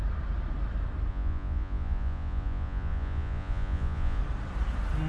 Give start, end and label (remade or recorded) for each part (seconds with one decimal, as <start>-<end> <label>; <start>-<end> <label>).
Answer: 0.0-1.1 recorded; 1.1-4.2 remade; 4.2-5.1 recorded